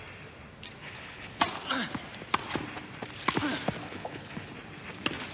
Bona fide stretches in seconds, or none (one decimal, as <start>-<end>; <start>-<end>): 0.0-0.8; 1.4-3.8; 4.5-5.3